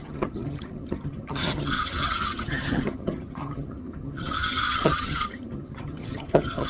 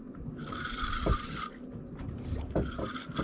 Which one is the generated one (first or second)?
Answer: first